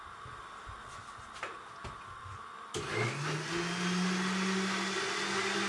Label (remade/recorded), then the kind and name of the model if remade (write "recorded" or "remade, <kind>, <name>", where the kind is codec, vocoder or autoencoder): recorded